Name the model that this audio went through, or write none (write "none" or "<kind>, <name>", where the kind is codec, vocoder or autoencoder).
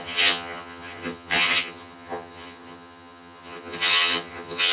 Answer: vocoder, HiFi-GAN